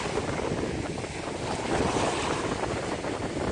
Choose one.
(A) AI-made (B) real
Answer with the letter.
B